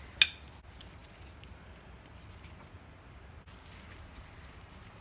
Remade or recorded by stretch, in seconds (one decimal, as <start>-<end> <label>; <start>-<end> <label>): 0.0-5.0 recorded